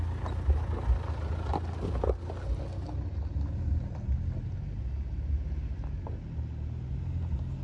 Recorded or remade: recorded